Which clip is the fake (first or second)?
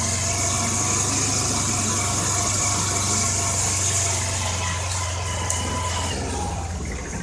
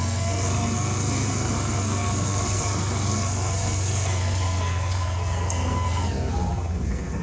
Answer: second